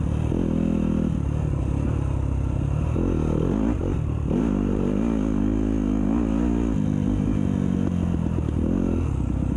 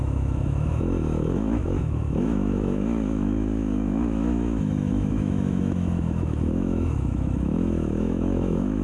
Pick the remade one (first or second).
second